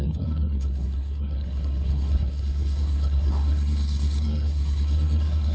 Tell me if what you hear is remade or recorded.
remade